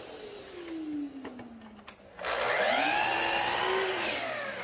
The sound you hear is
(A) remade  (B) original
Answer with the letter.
B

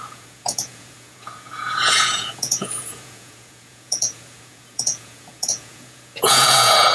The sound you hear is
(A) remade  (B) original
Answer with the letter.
A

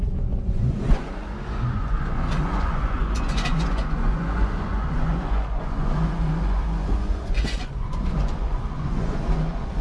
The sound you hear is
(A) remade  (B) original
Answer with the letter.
A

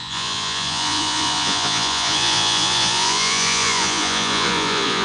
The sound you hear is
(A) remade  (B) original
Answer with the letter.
A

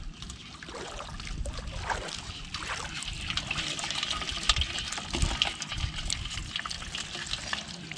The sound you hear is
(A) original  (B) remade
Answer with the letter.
A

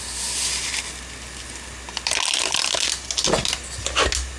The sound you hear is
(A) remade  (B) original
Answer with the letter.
B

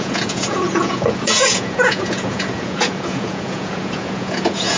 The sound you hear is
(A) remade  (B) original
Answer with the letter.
A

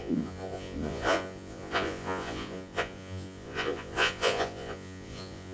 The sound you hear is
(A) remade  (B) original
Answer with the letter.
A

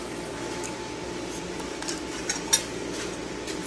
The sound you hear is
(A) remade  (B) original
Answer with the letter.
B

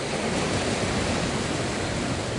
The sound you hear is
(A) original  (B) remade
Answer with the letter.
A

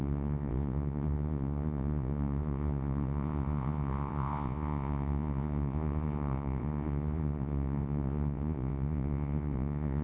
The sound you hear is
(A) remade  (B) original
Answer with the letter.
A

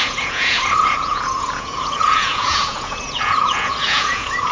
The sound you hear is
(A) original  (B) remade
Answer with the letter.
B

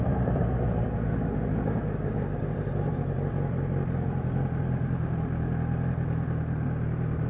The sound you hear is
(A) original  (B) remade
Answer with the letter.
A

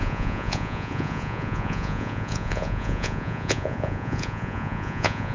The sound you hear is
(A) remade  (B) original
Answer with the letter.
A